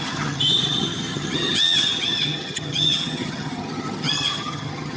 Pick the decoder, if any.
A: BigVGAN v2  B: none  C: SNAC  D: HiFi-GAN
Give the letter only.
D